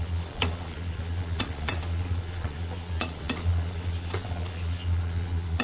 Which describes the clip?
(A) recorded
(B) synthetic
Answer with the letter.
B